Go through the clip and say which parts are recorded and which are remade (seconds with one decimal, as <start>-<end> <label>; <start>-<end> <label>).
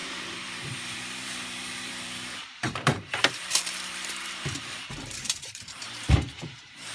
0.0-6.9 remade